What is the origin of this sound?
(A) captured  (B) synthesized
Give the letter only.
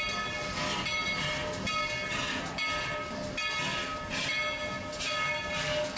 A